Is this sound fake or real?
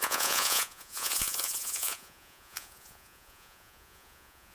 fake